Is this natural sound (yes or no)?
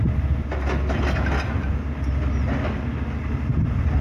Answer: yes